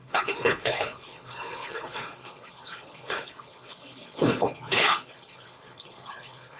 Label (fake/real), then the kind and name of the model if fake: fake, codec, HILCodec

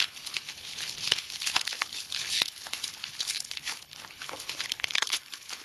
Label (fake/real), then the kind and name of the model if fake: fake, codec, HILCodec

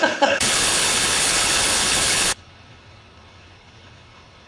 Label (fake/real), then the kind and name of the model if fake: fake, codec, HILCodec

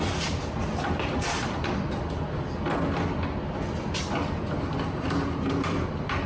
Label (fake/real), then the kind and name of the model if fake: real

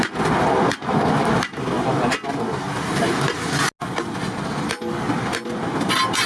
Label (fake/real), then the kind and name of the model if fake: real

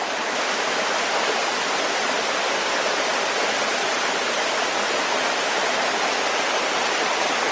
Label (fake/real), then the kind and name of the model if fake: real